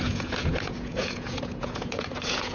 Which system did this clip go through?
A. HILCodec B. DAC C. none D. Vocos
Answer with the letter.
D